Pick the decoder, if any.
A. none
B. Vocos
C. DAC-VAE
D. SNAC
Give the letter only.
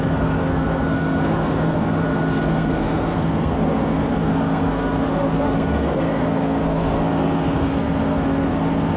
D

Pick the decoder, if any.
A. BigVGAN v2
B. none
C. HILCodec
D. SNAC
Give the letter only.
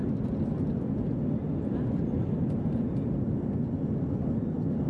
B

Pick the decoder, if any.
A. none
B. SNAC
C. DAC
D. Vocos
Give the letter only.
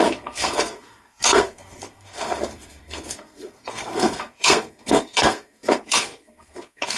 B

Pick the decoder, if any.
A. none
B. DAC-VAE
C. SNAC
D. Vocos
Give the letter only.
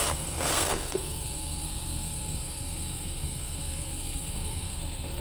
C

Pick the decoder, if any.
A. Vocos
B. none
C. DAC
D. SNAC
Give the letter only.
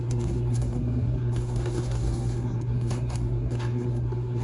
D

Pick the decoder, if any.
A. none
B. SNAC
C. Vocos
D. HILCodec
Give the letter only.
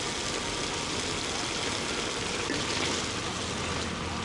A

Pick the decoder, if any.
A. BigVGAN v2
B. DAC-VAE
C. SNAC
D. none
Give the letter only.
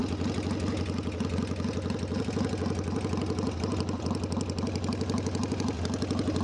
D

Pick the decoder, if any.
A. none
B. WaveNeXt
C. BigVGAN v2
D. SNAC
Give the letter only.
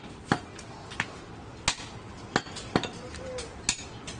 A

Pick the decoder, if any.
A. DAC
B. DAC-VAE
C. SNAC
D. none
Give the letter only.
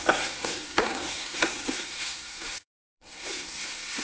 C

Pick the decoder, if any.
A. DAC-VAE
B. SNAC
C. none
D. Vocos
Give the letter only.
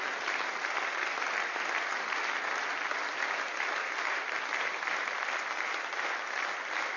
C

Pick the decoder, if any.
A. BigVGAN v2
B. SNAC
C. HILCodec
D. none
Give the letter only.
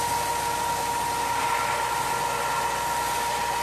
D